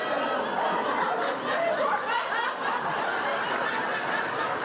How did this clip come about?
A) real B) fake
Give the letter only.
A